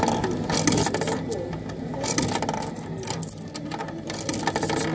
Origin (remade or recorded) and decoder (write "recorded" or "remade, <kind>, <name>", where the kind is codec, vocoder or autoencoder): recorded